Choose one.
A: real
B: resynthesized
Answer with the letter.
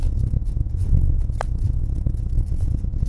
A